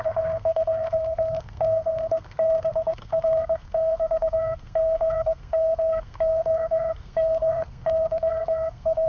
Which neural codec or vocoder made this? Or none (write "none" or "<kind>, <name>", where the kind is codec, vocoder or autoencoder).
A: codec, SNAC